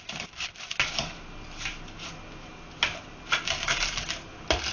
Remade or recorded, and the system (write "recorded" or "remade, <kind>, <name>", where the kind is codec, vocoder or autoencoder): recorded